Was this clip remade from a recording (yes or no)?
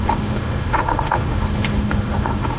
yes